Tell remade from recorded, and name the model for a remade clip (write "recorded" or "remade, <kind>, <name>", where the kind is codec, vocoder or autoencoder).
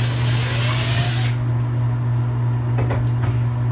recorded